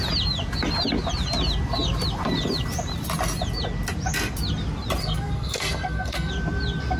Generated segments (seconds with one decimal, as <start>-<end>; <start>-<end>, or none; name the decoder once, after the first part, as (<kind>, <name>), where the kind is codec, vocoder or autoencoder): 5.0-6.3 (codec, SNAC)